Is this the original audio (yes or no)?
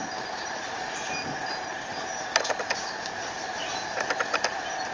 yes